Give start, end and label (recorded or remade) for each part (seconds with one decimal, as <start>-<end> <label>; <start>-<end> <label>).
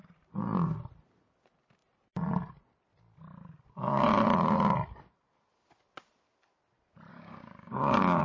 0.0-7.1 recorded; 7.1-8.2 remade